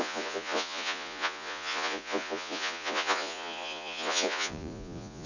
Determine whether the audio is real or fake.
fake